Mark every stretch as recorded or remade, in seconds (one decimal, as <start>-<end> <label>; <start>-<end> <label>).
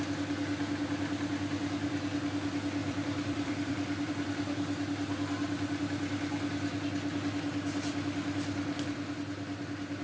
0.0-2.8 recorded; 2.8-4.1 remade; 4.1-10.0 recorded